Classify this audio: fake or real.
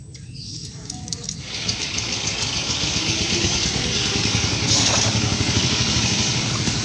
fake